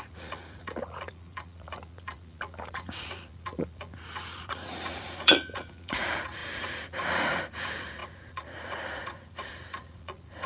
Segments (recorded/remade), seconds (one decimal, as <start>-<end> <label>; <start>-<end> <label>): 0.0-10.5 remade